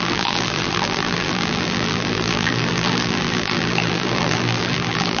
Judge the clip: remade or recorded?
remade